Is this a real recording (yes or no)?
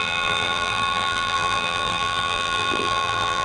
no